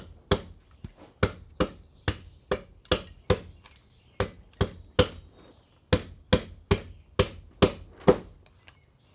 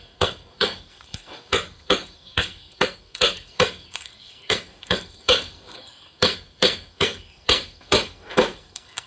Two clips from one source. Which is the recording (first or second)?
first